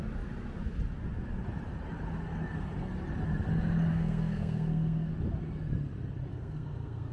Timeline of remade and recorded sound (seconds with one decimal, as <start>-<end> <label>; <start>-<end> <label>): 0.0-3.9 recorded; 3.9-5.1 remade; 5.1-6.3 recorded; 6.3-7.1 remade